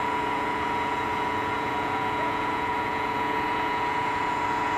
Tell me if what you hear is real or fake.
fake